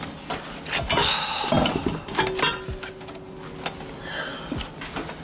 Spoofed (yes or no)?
no